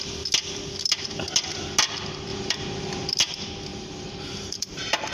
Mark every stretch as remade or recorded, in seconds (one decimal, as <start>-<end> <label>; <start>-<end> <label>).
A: 0.0-2.3 recorded; 2.3-3.2 remade; 3.2-3.7 recorded; 3.7-5.1 remade